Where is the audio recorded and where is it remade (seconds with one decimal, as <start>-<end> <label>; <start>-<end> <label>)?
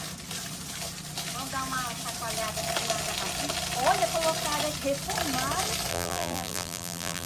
0.0-5.9 recorded; 5.9-7.3 remade